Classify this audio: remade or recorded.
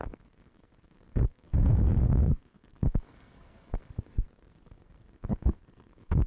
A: remade